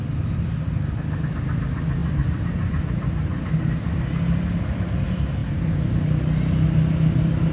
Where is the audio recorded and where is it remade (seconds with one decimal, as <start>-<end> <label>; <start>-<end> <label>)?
0.0-2.0 recorded; 2.0-3.6 remade; 3.6-7.5 recorded